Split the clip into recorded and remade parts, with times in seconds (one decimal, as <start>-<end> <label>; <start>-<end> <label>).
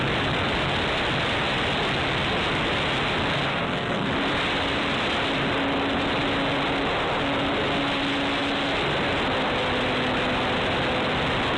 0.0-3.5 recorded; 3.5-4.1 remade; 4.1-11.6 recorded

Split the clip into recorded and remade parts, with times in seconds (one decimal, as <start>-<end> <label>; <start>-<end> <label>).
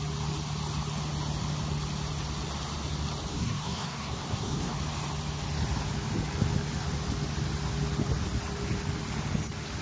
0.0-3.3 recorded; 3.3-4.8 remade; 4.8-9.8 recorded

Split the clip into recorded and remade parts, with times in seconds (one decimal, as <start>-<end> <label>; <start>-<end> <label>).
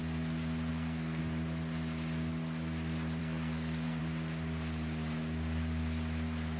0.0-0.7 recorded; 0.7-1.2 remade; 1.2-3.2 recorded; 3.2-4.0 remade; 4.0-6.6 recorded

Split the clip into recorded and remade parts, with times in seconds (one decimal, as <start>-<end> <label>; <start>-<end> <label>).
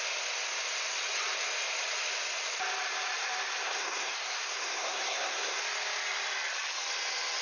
0.0-3.6 recorded; 3.6-5.6 remade; 5.6-7.4 recorded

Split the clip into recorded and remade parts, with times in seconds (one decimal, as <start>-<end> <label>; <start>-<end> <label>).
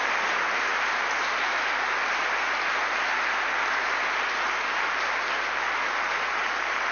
0.0-6.9 recorded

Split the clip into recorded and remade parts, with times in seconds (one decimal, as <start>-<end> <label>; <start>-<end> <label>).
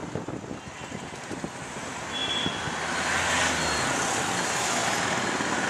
0.0-5.7 recorded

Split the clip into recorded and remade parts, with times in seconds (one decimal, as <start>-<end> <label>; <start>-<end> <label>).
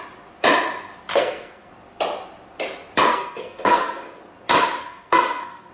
0.0-1.1 recorded; 1.1-1.7 remade; 1.7-3.1 recorded; 3.1-4.2 remade; 4.2-4.8 recorded; 4.8-5.7 remade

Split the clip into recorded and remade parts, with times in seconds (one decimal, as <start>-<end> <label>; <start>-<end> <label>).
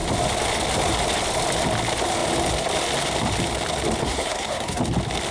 0.0-4.0 recorded; 4.0-4.8 remade; 4.8-5.3 recorded